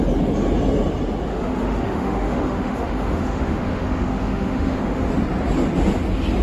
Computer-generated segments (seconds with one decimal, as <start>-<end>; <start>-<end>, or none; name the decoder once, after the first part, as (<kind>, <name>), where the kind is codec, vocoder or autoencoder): 1.3-5.1 (autoencoder, DAC-VAE)